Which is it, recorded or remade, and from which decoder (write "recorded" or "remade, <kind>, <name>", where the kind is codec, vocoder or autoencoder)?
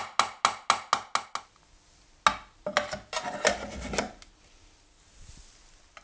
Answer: recorded